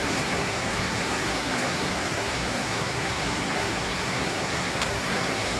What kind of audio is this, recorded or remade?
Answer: remade